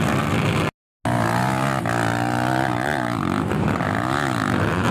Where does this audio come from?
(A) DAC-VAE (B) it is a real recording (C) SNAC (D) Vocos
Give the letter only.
B